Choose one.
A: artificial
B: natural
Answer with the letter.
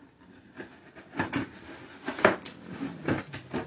B